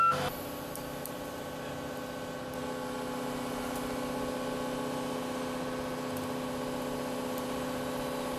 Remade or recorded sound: recorded